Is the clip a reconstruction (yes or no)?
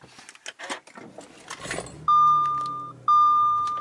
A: no